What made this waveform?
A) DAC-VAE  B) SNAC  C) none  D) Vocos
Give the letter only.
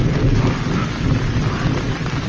C